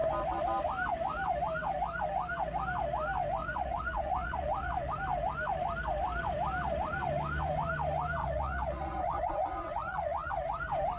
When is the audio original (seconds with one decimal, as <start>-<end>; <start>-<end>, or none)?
0.0-3.4; 4.9-8.2; 10.3-11.0